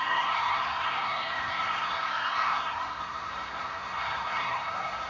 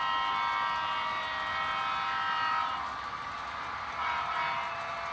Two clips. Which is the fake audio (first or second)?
first